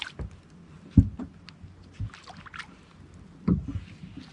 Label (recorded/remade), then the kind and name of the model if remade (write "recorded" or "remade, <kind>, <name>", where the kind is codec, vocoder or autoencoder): recorded